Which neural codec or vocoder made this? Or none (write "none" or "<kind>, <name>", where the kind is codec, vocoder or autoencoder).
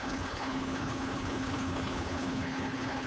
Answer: codec, HILCodec